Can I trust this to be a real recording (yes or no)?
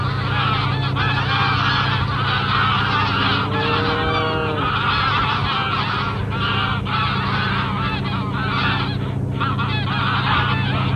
yes